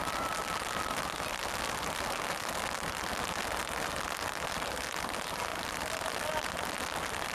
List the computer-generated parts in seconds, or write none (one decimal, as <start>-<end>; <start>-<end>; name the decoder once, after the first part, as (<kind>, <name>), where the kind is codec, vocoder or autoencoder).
none

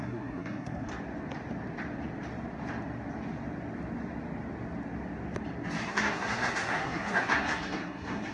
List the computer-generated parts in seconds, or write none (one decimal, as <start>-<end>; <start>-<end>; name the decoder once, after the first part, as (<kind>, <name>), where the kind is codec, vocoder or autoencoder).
0.0-0.9 (codec, SNAC); 5.9-8.3

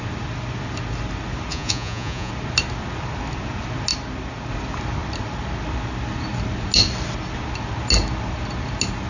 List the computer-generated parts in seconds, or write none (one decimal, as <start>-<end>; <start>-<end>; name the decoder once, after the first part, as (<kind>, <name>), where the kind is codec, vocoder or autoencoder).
1.5-2.3 (vocoder, Vocos)